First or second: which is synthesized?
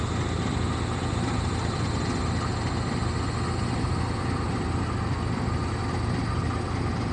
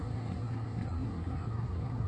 second